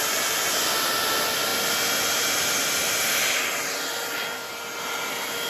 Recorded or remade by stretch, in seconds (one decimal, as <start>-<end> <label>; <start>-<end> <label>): 0.0-5.5 recorded